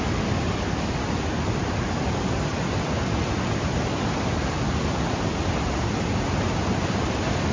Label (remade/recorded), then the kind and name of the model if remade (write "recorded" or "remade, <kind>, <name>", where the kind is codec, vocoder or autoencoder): recorded